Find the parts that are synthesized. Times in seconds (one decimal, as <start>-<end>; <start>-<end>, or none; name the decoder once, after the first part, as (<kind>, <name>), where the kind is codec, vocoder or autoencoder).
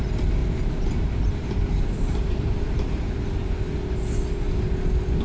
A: 0.4-3.5 (vocoder, BigVGAN v2)